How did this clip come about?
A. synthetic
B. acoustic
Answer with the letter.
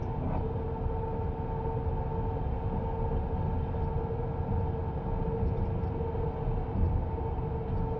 B